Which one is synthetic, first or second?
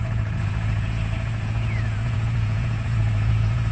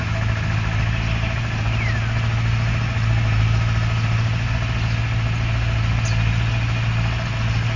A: first